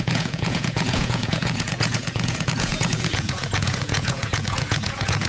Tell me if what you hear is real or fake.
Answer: fake